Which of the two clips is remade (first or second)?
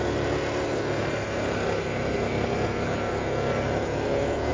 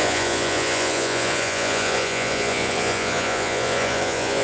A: second